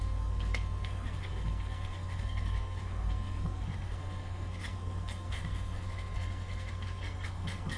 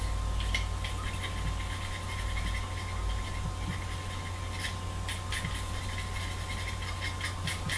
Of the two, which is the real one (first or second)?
second